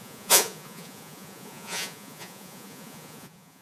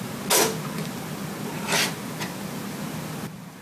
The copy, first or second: first